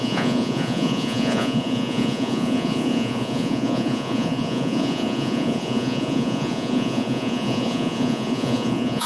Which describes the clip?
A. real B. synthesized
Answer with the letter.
B